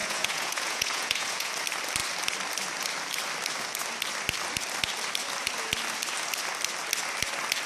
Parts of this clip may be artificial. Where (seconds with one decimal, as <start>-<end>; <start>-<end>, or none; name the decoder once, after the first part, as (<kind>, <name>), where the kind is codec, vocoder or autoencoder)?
0.0-1.5 (vocoder, Vocos)